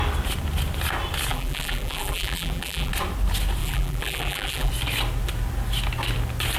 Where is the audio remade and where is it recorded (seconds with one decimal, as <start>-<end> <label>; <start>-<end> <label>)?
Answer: 0.0-1.3 recorded; 1.3-2.9 remade; 2.9-3.6 recorded; 3.6-4.7 remade; 4.7-6.6 recorded